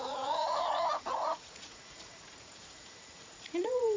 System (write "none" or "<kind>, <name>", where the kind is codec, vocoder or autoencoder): vocoder, Vocos